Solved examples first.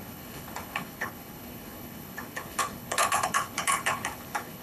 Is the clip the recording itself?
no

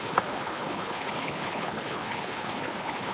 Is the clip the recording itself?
no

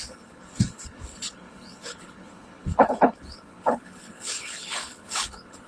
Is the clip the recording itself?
no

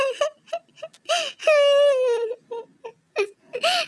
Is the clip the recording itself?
yes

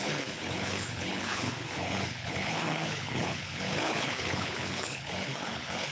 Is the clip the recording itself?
no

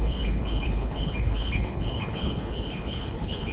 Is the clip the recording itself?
no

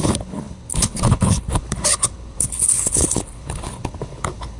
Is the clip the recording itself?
no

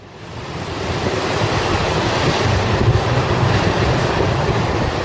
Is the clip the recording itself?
yes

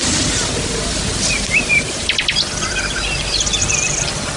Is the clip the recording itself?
yes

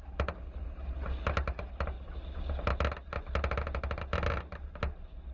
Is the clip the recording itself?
yes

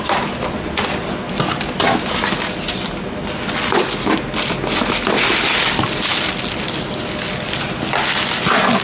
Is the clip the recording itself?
yes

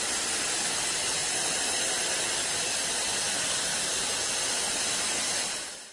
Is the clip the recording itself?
yes